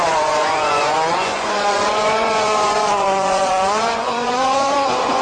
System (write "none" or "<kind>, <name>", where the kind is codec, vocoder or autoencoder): vocoder, Vocos